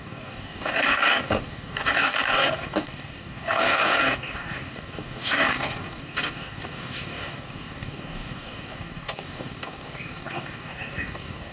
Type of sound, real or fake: fake